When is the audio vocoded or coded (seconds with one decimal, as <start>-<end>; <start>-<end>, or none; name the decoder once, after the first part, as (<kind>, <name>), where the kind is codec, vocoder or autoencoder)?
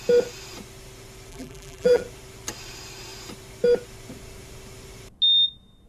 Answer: 1.3-2.0 (vocoder, BigVGAN v2)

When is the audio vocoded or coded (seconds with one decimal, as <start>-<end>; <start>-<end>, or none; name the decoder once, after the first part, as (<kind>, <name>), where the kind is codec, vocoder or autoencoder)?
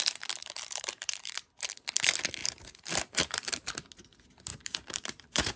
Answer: 0.4-1.3 (vocoder, BigVGAN v2); 2.4-3.6; 4.5-5.6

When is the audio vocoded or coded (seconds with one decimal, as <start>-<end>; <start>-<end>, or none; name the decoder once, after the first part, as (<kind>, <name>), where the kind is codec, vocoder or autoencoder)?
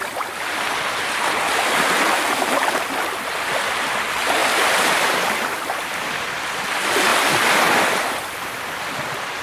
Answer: 4.4-6.4 (vocoder, BigVGAN v2); 7.1-7.8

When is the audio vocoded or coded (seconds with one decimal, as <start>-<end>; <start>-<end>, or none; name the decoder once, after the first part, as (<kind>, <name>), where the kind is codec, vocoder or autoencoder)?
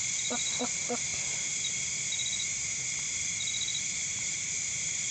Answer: 0.0-1.1 (vocoder, BigVGAN v2); 4.2-5.1